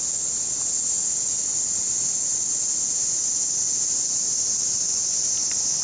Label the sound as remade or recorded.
recorded